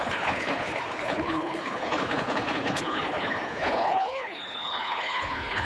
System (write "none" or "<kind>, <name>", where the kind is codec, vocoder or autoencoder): codec, HILCodec